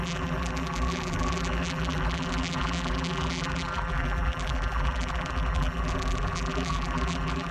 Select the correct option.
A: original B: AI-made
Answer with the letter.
B